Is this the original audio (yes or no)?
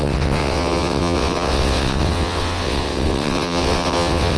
no